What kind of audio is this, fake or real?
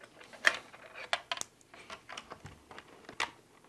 real